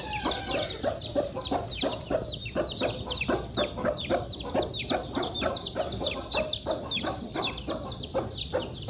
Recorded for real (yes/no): yes